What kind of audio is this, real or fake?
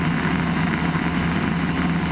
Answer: real